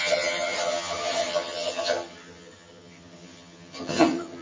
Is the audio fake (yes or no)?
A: yes